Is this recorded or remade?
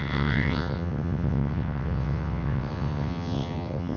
remade